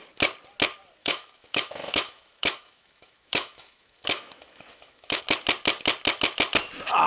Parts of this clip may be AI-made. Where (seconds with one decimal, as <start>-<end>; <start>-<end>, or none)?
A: 1.0-5.2